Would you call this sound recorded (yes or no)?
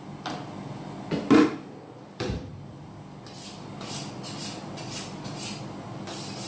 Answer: yes